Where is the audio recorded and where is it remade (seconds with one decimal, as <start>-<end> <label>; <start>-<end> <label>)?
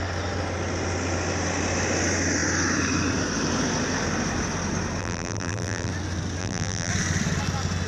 0.0-5.0 recorded; 5.0-5.9 remade; 5.9-6.4 recorded; 6.4-6.9 remade; 6.9-7.9 recorded